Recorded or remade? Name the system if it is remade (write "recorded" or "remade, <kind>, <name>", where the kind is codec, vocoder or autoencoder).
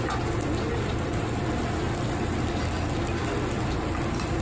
recorded